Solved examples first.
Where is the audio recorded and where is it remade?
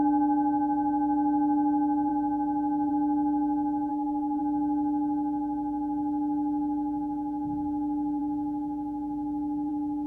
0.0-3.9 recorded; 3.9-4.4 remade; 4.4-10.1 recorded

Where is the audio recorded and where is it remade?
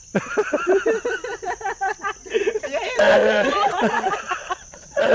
0.0-3.2 recorded; 3.2-5.1 remade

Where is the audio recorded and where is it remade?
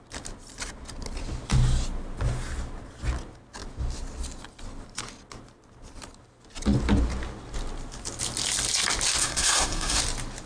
0.0-9.2 recorded; 9.2-10.0 remade; 10.0-10.5 recorded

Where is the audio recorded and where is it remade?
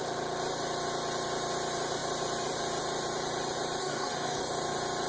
0.0-3.8 recorded; 3.8-4.4 remade; 4.4-5.1 recorded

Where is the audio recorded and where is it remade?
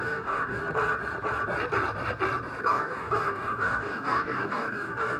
0.0-0.6 remade; 0.6-2.6 recorded; 2.6-5.2 remade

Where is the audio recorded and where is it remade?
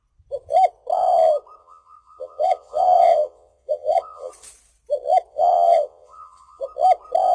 0.0-1.6 recorded; 1.6-4.3 remade; 4.3-5.3 recorded; 5.3-6.6 remade; 6.6-7.3 recorded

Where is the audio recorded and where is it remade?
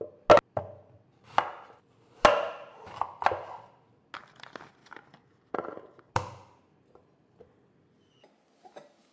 0.0-4.8 recorded; 4.8-6.1 remade; 6.1-9.1 recorded